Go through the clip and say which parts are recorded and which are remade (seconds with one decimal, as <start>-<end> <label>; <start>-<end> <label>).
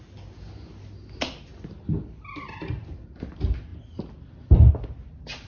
0.0-5.5 recorded